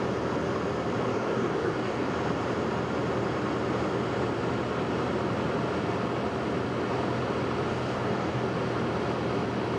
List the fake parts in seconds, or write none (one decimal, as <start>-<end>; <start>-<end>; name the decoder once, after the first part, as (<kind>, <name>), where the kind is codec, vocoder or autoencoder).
1.1-2.1 (codec, DAC); 7.7-8.4